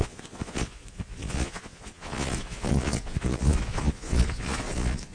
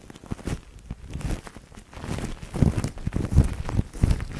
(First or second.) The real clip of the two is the second